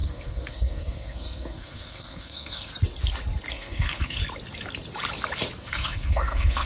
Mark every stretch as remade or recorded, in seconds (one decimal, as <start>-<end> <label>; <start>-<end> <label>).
0.0-2.7 remade; 2.7-3.5 recorded; 3.5-4.2 remade; 4.2-5.6 recorded; 5.6-6.7 remade